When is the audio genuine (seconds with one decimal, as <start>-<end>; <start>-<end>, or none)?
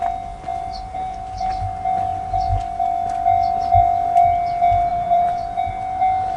0.0-4.9; 5.7-6.4